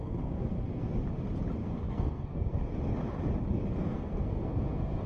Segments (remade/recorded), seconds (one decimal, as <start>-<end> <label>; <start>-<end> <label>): 0.0-0.9 remade; 0.9-1.6 recorded; 1.6-2.6 remade; 2.6-3.8 recorded; 3.8-5.1 remade

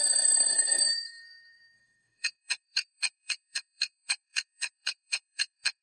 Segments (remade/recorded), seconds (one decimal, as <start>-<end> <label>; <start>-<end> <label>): 0.0-5.8 remade

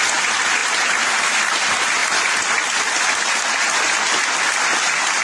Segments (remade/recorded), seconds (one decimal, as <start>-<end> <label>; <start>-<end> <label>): 0.0-5.2 recorded

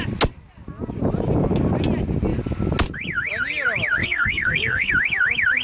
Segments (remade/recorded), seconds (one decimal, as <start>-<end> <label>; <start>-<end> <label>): 0.0-4.0 recorded; 4.0-4.9 remade; 4.9-5.6 recorded

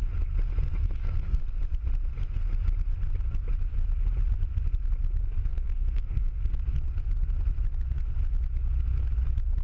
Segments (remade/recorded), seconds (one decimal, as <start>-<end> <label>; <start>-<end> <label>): 0.0-0.8 recorded; 0.8-1.4 remade; 1.4-5.5 recorded; 5.5-6.6 remade; 6.6-9.6 recorded